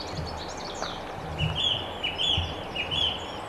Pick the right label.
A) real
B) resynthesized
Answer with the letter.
A